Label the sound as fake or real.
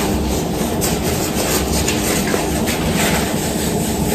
real